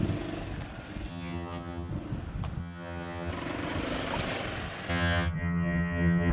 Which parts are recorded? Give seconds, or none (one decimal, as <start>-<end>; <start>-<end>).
0.0-1.1; 1.9-2.6; 3.3-4.9